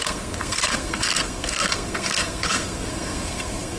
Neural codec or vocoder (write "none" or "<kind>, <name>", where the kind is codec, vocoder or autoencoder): codec, SNAC